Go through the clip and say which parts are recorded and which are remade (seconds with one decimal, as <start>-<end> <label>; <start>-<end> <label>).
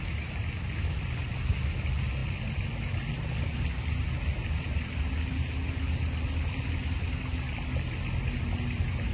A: 0.0-9.1 recorded